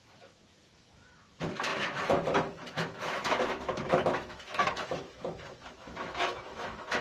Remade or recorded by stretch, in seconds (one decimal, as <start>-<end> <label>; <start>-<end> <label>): 0.0-7.0 remade